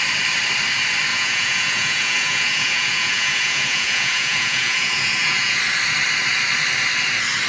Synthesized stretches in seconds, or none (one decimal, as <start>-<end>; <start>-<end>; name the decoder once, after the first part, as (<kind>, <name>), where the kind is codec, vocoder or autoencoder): 1.1-5.6 (vocoder, Vocos)